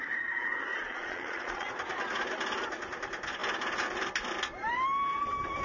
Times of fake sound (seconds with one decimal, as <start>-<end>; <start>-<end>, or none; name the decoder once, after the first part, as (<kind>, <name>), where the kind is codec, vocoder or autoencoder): 0.7-1.7 (vocoder, Vocos)